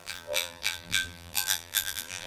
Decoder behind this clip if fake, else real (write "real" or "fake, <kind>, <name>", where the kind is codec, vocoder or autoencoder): fake, vocoder, BigVGAN v2